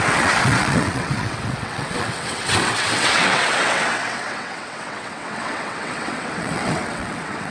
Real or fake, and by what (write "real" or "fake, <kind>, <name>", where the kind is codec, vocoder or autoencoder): fake, vocoder, WaveNeXt